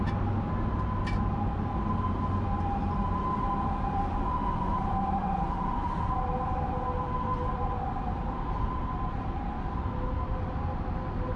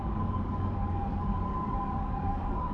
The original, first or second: first